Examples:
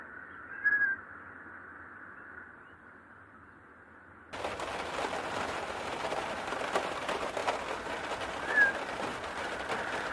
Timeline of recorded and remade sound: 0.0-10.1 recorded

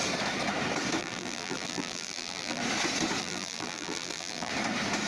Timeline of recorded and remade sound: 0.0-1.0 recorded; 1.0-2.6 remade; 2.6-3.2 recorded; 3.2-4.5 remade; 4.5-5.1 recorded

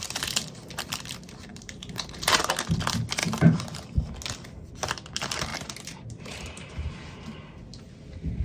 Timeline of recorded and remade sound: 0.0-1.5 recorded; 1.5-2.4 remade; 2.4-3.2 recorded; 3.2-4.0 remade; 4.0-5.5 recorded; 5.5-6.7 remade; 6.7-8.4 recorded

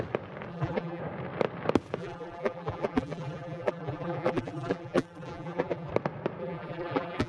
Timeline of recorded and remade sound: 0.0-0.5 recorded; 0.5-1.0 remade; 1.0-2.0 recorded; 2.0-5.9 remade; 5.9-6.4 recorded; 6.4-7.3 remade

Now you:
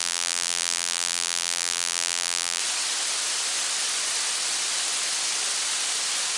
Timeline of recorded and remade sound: 0.0-2.6 remade; 2.6-6.4 recorded

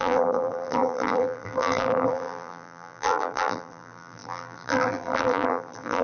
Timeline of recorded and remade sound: 0.0-6.0 remade

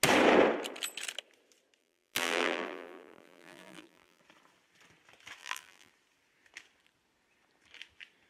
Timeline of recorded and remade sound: 0.0-1.8 recorded; 1.8-4.2 remade; 4.2-5.4 recorded; 5.4-5.9 remade; 5.9-8.3 recorded